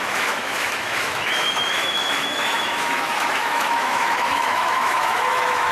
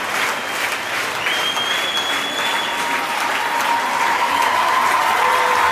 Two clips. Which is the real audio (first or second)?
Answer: second